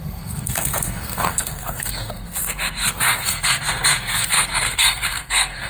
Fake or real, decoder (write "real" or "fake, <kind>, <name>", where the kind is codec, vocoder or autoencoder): fake, codec, SNAC